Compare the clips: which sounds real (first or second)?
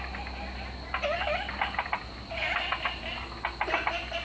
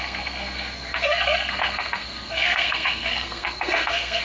first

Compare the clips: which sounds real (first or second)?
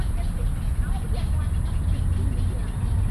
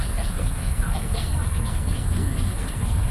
first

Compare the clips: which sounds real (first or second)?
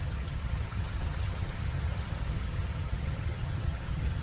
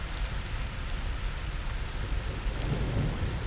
second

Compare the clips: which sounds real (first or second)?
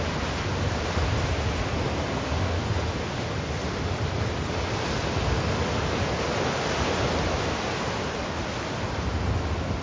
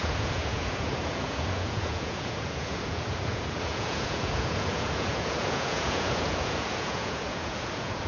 first